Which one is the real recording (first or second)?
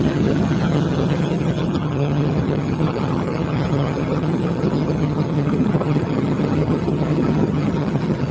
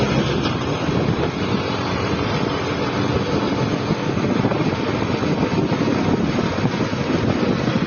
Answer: second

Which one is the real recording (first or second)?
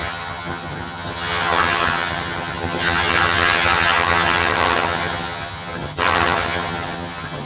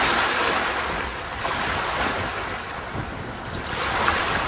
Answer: second